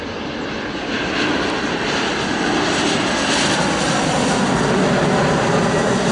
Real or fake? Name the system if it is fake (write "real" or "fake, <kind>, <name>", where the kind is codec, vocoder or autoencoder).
fake, vocoder, BigVGAN v2